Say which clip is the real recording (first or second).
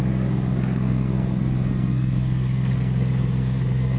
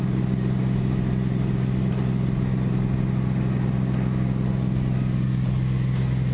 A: second